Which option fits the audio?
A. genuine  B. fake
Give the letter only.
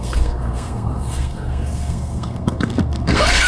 B